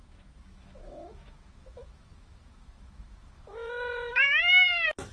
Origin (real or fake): fake